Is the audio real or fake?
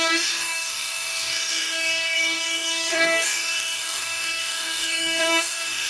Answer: fake